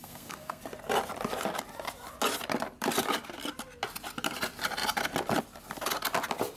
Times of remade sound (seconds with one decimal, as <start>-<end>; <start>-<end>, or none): 0.0-0.6